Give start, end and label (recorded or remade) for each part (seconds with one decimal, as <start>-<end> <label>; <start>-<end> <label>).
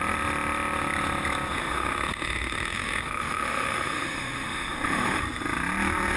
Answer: 0.0-1.5 recorded; 1.5-5.2 remade; 5.2-6.2 recorded